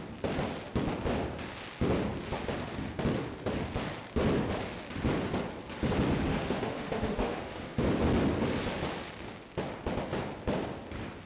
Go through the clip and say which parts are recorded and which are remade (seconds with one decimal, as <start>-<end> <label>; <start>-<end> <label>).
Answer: 0.0-6.3 recorded; 6.3-7.8 remade; 7.8-11.3 recorded